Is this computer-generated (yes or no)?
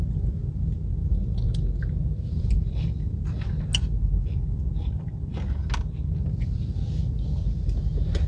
no